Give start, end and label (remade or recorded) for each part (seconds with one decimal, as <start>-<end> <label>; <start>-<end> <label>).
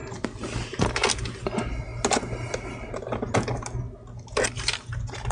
0.0-5.3 recorded